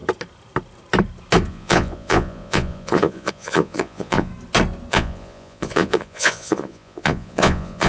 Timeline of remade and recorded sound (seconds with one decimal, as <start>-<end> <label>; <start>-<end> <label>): 0.0-1.5 recorded; 1.5-4.3 remade; 4.3-4.9 recorded; 4.9-7.9 remade